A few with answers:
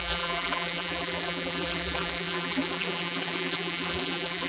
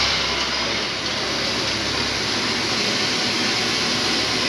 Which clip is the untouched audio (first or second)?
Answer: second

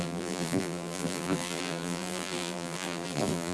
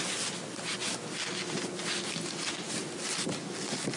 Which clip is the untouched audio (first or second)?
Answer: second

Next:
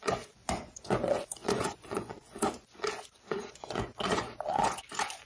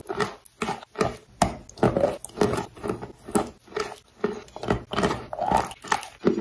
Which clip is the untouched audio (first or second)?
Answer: second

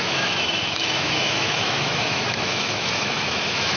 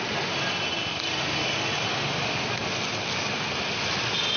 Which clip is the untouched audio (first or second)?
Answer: second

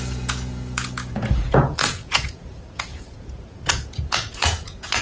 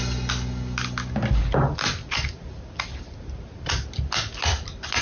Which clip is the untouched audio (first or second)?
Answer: second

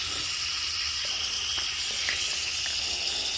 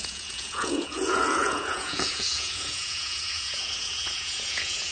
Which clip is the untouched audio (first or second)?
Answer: first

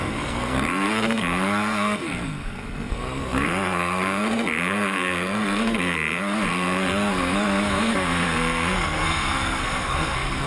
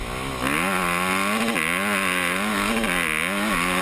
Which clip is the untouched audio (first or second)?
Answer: second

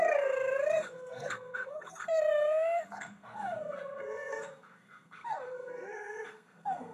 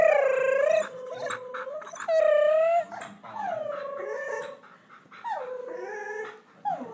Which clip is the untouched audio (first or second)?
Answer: second